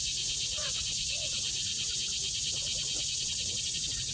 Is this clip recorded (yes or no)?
no